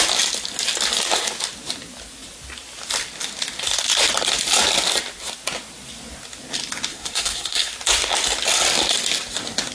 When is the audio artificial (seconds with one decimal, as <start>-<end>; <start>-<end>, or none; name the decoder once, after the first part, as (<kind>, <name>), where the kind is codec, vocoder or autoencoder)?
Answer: 6.9-7.7 (codec, SNAC)